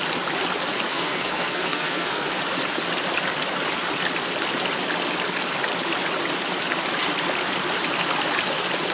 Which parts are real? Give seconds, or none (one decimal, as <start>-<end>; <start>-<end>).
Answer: 0.0-0.9; 2.4-8.9